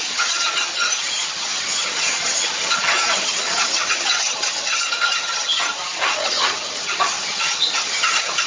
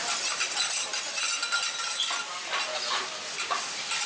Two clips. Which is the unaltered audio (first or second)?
second